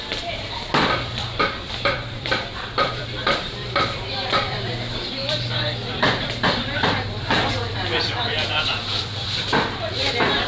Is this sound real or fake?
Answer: fake